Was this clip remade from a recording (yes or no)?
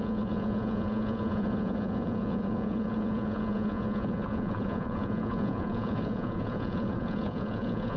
yes